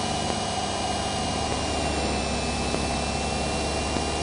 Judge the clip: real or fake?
real